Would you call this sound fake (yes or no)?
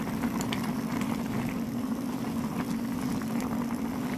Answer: no